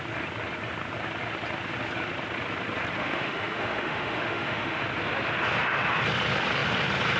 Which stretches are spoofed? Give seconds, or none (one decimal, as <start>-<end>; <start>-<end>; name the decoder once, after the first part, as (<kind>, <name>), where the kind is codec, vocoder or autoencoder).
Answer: 3.0-4.8 (autoencoder, DAC-VAE)